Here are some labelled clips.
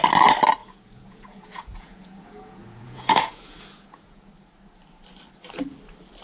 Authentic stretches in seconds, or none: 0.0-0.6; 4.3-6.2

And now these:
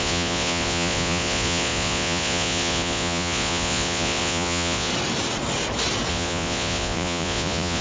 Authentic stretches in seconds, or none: 4.9-6.1